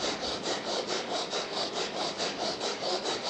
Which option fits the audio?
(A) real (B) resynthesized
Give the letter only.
B